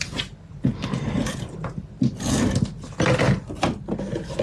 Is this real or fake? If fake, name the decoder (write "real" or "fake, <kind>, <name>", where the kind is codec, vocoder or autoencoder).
real